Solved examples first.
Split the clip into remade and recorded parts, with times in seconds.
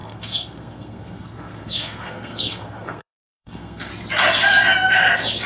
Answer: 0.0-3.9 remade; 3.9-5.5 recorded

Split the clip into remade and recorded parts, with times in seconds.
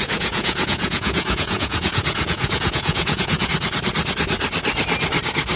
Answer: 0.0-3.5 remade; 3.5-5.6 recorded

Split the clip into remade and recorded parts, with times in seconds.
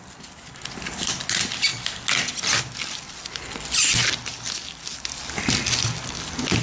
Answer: 0.0-6.6 recorded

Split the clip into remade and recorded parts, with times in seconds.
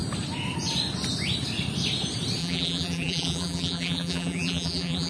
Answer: 0.0-2.4 recorded; 2.4-5.1 remade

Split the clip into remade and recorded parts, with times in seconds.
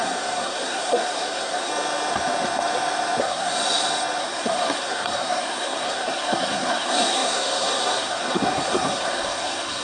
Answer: 0.0-1.7 remade; 1.7-3.2 recorded; 3.2-3.6 remade; 3.6-4.2 recorded; 4.2-9.8 remade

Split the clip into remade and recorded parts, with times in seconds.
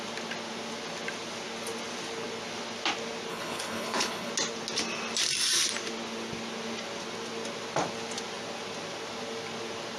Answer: 0.0-3.3 recorded; 3.3-4.3 remade; 4.3-10.0 recorded